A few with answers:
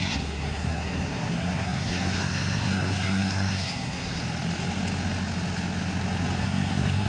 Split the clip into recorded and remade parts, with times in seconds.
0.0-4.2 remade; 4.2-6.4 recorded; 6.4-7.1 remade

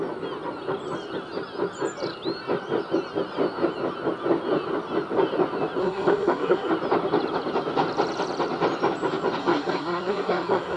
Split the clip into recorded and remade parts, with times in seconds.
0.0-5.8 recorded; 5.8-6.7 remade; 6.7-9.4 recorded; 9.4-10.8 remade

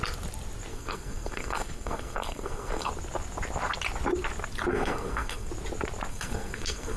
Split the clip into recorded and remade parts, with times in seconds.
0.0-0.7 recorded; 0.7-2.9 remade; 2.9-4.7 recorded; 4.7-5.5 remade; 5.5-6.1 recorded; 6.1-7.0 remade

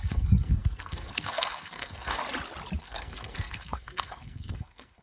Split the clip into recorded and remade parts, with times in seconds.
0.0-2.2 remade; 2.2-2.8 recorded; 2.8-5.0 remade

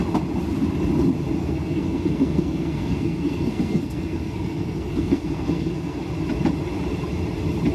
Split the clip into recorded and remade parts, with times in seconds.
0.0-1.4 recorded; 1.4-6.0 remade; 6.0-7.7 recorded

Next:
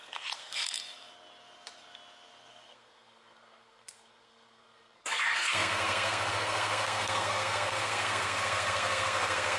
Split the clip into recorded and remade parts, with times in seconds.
0.0-0.6 remade; 0.6-2.5 recorded; 2.5-9.6 remade

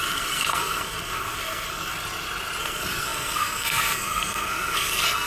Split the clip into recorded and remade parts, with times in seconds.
0.0-1.9 remade; 1.9-2.6 recorded; 2.6-5.3 remade

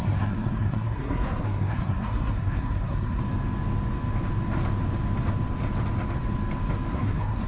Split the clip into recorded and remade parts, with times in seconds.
0.0-3.2 remade; 3.2-6.9 recorded; 6.9-7.5 remade